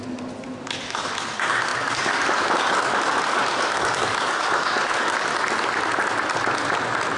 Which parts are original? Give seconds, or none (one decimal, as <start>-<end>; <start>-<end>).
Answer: 0.0-0.6; 5.3-7.2